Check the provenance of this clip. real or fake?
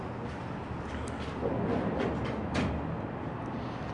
real